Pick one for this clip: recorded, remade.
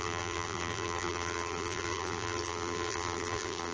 remade